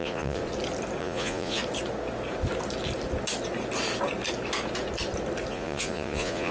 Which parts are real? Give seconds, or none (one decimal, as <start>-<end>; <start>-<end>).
0.4-1.0; 1.6-5.5